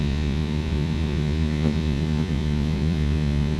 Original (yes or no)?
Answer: no